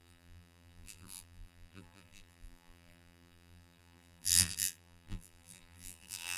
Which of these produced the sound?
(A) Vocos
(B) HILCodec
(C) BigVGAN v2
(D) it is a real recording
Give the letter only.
C